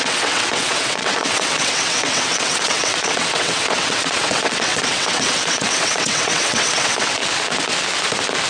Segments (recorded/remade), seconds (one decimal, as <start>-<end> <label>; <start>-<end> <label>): 0.0-7.2 remade; 7.2-8.5 recorded